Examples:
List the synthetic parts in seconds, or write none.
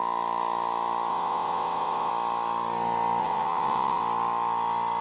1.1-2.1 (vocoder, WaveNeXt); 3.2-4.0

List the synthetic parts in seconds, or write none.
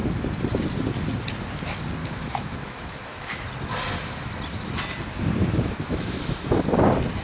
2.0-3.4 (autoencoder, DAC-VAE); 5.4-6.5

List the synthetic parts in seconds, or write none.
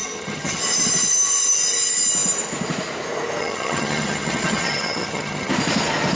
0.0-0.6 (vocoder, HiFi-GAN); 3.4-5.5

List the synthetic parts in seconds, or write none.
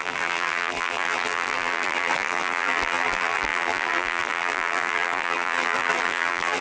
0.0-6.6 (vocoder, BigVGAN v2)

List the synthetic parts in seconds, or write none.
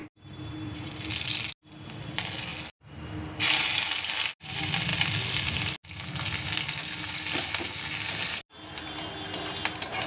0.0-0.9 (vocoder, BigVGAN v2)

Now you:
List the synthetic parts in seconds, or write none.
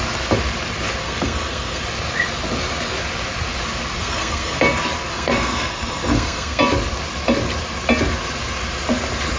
1.0-1.8 (codec, SNAC); 4.0-4.6; 5.1-6.6